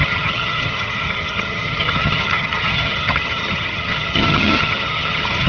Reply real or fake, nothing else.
fake